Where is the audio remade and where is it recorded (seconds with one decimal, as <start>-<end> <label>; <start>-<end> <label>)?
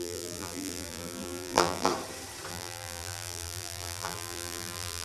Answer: 0.0-1.9 remade; 1.9-2.5 recorded; 2.5-5.0 remade